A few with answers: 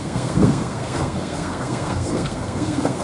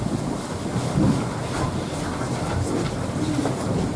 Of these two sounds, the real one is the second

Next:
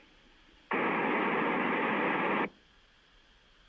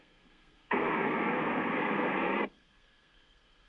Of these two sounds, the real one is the first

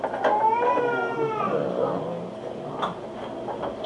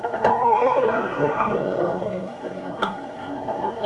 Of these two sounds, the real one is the first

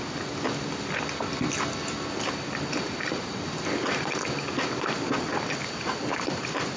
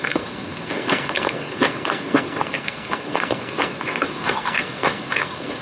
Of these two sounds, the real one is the first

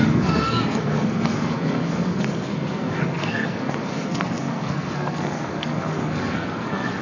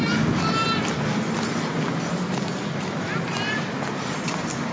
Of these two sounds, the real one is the second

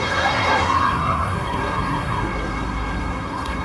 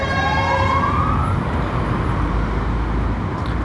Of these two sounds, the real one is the second